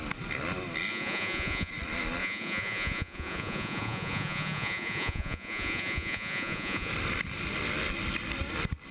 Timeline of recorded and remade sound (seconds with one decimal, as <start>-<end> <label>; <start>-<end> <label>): 0.0-0.9 recorded; 0.9-1.7 remade; 1.7-2.2 recorded; 2.2-6.9 remade; 6.9-8.9 recorded